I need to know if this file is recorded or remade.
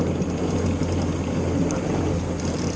recorded